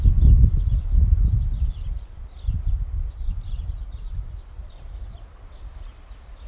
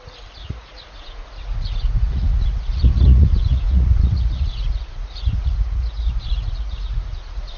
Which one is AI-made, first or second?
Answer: second